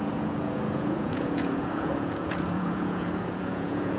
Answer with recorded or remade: remade